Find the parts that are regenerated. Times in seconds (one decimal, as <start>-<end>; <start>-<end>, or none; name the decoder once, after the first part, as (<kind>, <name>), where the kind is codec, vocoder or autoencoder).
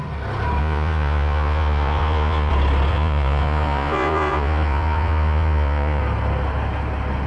0.6-2.5 (vocoder, Vocos); 2.9-6.0